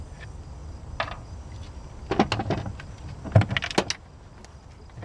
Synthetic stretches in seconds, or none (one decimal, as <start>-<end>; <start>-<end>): none